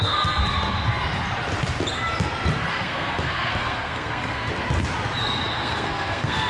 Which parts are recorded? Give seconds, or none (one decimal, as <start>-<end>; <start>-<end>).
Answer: 0.4-2.7; 4.5-5.5